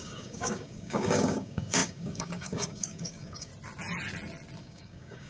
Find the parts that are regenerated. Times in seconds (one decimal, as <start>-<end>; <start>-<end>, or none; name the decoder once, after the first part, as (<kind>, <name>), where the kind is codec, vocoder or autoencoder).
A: 0.0-3.5 (codec, DAC); 4.6-5.3